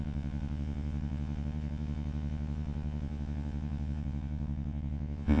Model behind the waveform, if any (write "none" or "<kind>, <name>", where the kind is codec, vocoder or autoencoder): vocoder, Vocos